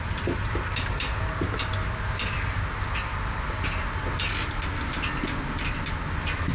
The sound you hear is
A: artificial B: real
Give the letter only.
B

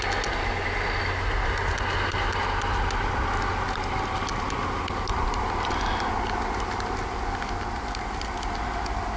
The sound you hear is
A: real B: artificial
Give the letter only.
A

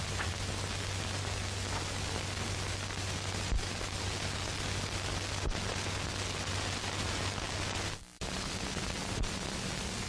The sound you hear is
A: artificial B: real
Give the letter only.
B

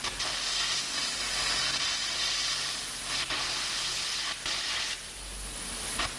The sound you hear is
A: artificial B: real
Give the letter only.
B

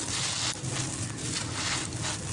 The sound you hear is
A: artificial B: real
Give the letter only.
B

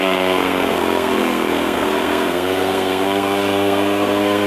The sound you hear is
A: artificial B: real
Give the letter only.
A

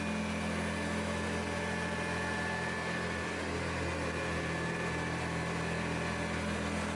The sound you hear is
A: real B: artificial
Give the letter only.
A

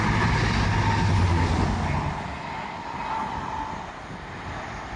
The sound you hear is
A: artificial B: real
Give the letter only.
B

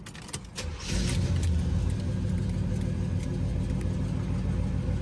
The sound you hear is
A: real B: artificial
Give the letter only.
A